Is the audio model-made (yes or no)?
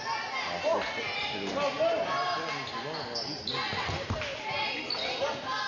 no